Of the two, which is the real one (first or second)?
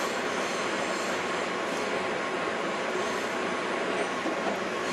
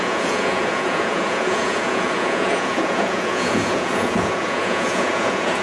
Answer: first